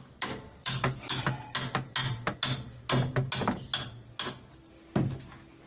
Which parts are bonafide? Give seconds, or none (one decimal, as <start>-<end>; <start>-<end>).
0.0-0.6; 1.2-5.7